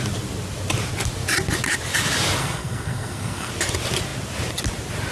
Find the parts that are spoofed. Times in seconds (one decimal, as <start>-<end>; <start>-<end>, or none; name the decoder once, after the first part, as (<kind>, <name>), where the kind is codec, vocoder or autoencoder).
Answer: 2.4-3.5 (codec, SNAC)